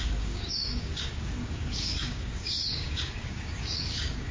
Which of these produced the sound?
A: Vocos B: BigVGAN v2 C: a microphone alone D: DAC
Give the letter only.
D